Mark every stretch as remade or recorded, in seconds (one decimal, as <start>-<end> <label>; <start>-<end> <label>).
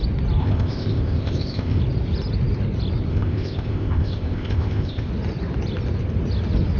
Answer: 0.0-0.4 recorded; 0.4-1.8 remade; 1.8-3.1 recorded; 3.1-5.1 remade; 5.1-6.8 recorded